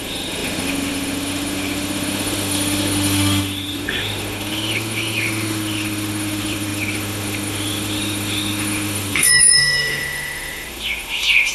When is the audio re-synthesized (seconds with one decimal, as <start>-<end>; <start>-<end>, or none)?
0.0-11.5